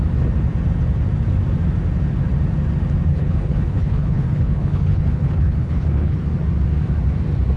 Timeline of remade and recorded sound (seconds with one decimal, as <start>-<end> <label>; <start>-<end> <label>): 0.0-3.1 recorded; 3.1-6.2 remade; 6.2-7.6 recorded